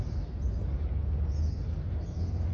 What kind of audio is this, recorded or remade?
recorded